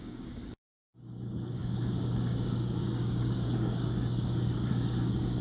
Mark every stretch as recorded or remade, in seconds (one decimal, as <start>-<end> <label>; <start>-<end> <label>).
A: 0.0-5.4 remade